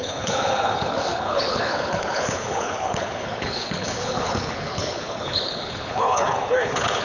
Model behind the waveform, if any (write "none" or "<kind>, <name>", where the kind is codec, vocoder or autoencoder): codec, HILCodec